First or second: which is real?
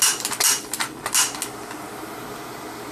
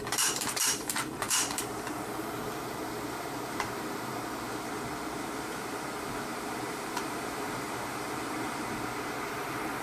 first